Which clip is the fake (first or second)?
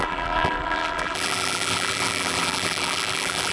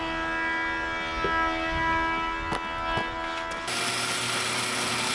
first